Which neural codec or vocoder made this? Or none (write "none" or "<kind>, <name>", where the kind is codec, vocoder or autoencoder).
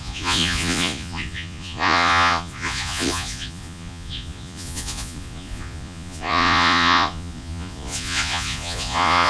vocoder, Vocos